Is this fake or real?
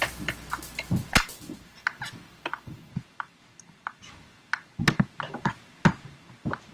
real